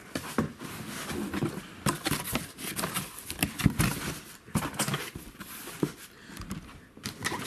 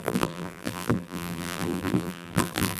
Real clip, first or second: first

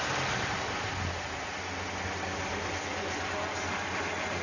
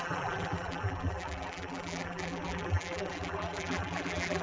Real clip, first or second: first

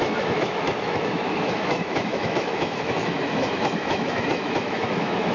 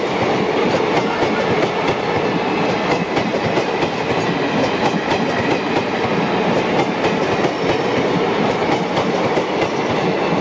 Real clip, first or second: second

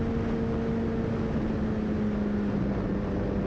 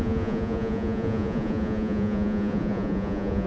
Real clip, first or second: first